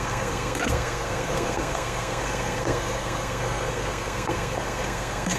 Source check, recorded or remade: remade